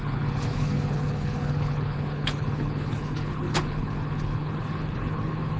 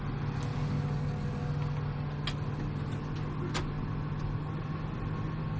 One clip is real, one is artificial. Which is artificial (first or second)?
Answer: first